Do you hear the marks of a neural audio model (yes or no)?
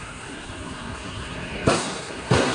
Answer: yes